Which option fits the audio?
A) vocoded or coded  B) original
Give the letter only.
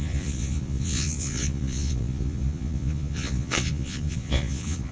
A